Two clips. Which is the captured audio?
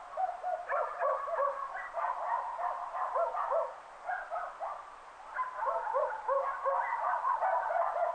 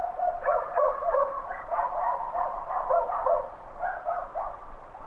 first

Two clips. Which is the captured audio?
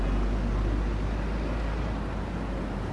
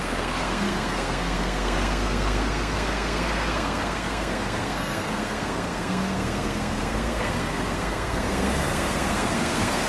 first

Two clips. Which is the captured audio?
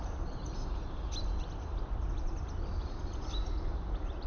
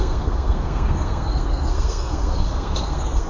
first